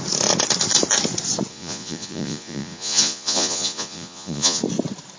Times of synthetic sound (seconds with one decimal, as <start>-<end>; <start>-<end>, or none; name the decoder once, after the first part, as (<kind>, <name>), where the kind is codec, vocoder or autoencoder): 1.5-4.6 (vocoder, Vocos)